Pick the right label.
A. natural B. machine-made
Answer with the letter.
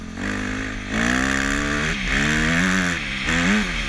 A